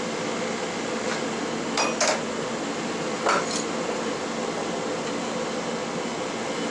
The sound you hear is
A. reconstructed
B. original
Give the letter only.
B